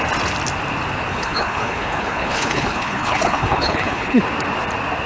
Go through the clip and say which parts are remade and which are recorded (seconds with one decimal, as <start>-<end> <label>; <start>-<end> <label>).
0.0-1.1 recorded; 1.1-4.2 remade; 4.2-5.1 recorded